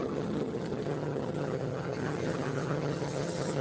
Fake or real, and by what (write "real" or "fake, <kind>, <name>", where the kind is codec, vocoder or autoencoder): fake, vocoder, HiFi-GAN